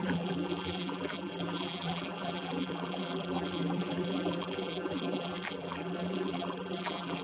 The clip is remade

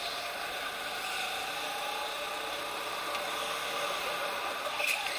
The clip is recorded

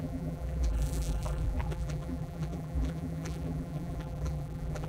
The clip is remade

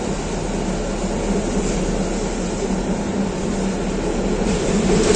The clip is recorded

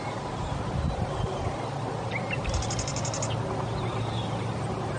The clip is recorded